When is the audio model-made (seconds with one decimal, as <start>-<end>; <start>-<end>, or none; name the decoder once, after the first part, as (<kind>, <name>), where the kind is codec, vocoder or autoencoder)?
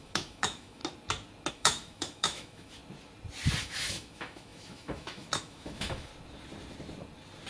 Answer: 0.0-0.8 (autoencoder, DAC-VAE); 1.5-2.8; 3.6-6.1